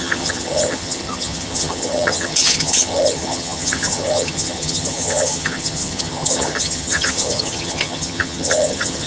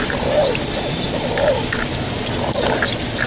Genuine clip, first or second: second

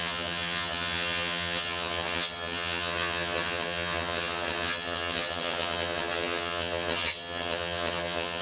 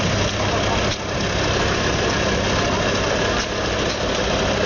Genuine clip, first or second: second